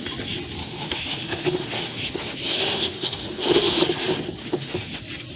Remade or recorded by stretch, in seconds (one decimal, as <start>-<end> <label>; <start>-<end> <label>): 0.0-0.6 recorded; 0.6-3.8 remade; 3.8-4.4 recorded; 4.4-5.0 remade; 5.0-5.4 recorded